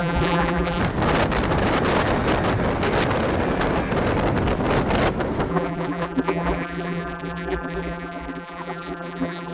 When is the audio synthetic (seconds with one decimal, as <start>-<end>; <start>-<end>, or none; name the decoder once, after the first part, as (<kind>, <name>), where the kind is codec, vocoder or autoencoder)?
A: 0.0-0.8 (vocoder, BigVGAN v2); 5.5-9.5